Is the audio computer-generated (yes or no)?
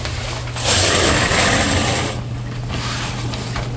no